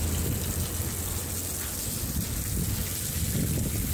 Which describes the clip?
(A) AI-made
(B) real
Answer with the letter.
B